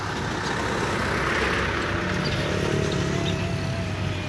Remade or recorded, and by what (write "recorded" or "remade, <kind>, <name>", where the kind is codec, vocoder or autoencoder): recorded